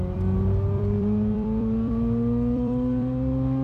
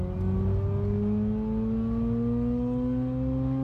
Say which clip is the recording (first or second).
second